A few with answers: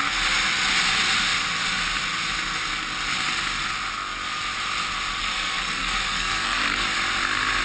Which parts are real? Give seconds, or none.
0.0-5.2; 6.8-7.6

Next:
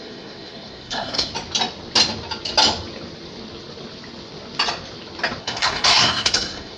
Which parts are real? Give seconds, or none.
1.3-5.4

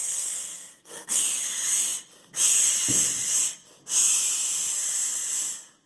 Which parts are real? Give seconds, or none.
1.2-5.9

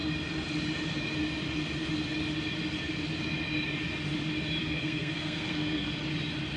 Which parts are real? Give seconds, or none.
0.0-4.6; 6.0-6.6

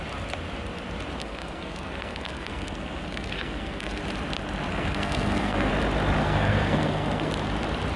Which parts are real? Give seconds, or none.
0.0-1.2; 4.0-4.7; 5.7-6.2; 7.3-8.0